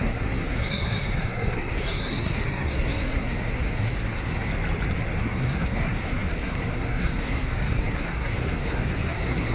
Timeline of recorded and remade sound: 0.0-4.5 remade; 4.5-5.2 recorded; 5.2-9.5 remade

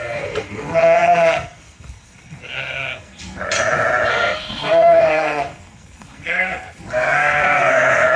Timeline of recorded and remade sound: 0.0-3.4 remade; 3.4-4.1 recorded; 4.1-8.2 remade